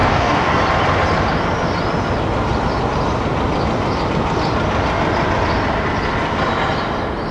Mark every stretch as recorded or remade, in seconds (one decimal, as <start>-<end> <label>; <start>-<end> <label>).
0.0-0.6 remade; 0.6-7.3 recorded